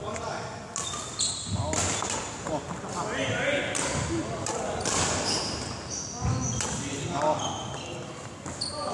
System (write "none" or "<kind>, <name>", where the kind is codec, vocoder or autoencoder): none